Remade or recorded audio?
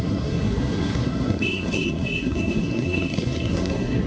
remade